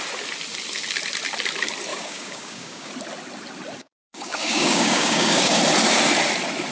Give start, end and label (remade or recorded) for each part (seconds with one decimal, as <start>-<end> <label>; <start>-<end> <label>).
0.0-1.9 recorded; 1.9-2.9 remade; 2.9-3.8 recorded; 3.8-5.6 remade; 5.6-6.7 recorded